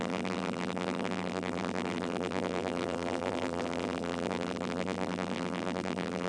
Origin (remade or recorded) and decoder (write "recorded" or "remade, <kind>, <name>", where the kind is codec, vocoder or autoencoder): remade, vocoder, BigVGAN v2